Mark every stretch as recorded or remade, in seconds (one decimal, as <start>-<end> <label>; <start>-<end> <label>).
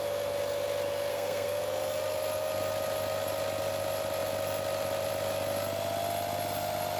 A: 0.0-1.1 recorded; 1.1-1.6 remade; 1.6-7.0 recorded